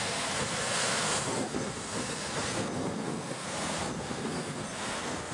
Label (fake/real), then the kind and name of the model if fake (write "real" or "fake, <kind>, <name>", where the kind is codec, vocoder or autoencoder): fake, codec, SNAC